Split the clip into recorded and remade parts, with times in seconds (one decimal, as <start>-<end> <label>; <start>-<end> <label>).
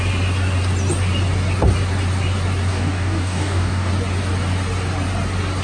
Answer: 0.0-2.7 recorded; 2.7-3.9 remade; 3.9-5.6 recorded